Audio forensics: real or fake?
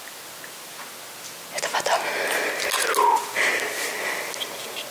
real